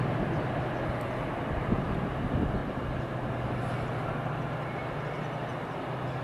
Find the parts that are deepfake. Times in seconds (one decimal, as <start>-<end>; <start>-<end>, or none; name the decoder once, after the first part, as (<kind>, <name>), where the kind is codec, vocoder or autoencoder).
none